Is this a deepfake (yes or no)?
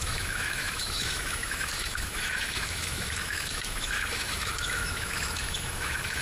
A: yes